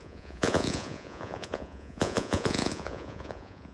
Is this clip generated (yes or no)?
yes